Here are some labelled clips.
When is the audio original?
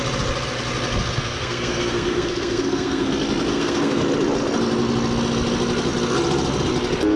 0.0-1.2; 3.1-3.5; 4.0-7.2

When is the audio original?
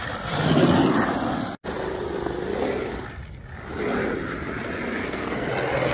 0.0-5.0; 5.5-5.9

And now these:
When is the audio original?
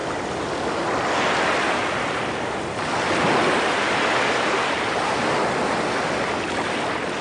0.0-7.2